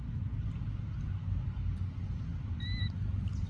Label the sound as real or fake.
real